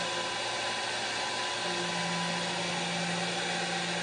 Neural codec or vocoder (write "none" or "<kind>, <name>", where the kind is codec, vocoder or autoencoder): none